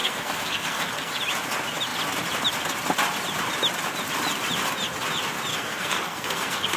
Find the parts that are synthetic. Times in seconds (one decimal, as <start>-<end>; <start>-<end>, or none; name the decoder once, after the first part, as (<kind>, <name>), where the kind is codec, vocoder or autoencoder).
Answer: 0.0-1.1 (codec, SNAC); 5.5-6.8